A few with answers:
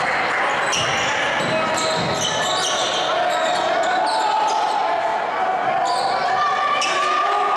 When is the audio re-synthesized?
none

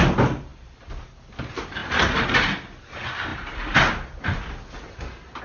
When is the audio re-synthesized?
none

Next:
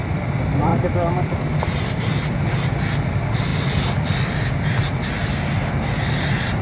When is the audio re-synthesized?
none

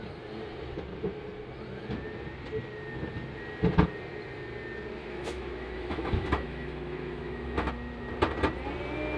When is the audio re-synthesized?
5.0-7.7 (autoencoder, DAC-VAE)

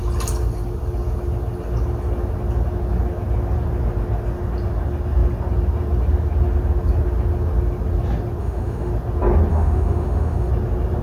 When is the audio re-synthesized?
8.4-8.9 (autoencoder, DAC-VAE); 9.5-10.5

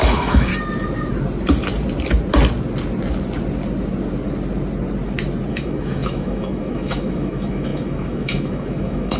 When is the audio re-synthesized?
0.0-0.5 (autoencoder, DAC-VAE); 5.5-9.2